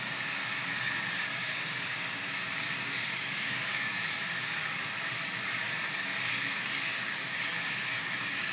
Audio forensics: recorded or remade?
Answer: remade